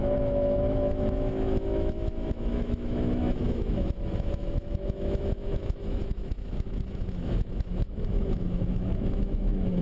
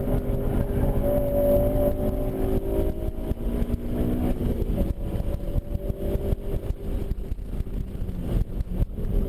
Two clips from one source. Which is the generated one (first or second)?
first